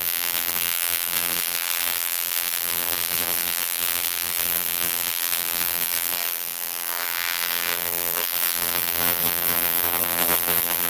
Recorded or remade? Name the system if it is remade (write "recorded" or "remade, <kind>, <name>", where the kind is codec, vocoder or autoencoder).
remade, vocoder, BigVGAN v2